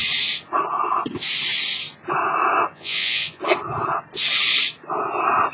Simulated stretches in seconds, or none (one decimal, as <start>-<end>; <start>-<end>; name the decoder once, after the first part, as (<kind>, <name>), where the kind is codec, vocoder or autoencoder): 2.7-3.4 (vocoder, Vocos)